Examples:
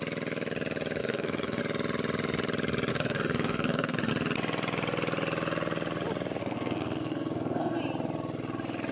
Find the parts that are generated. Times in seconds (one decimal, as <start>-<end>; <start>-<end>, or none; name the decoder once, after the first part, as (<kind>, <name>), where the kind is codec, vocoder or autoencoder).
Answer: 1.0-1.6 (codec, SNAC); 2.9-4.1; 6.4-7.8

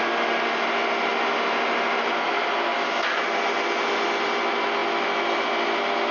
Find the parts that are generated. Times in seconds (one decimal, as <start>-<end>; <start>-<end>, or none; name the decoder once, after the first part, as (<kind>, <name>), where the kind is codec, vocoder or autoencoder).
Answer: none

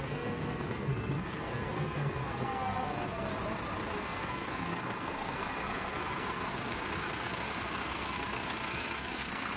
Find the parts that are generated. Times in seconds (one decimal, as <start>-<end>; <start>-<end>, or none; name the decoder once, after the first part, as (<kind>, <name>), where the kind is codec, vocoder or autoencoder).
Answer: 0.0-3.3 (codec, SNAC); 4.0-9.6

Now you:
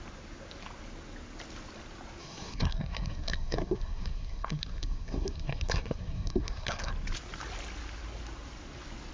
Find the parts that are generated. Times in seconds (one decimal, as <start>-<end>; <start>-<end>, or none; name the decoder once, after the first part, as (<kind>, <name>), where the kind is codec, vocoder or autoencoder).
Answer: 2.2-6.9 (codec, SNAC)

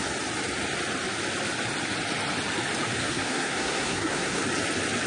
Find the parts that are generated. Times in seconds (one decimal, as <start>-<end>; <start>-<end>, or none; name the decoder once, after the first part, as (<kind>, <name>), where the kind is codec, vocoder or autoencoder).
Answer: 3.0-4.4 (codec, SNAC)